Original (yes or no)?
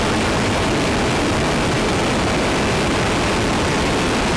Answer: yes